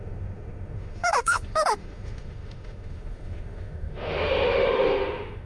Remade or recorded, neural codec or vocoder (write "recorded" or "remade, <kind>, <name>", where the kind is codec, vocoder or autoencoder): remade, autoencoder, DAC-VAE